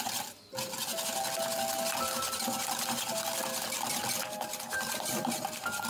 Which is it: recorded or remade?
recorded